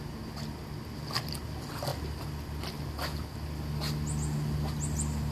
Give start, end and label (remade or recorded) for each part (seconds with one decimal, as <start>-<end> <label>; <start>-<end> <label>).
0.0-5.3 recorded